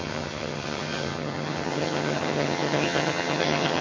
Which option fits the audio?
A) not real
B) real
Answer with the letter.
A